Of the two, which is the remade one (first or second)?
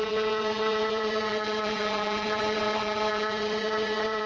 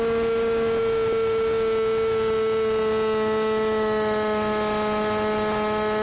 first